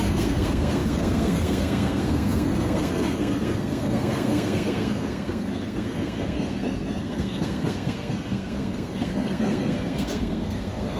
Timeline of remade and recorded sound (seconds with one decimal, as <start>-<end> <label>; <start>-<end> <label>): 0.0-11.0 remade